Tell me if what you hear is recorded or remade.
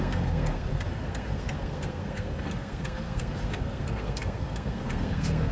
remade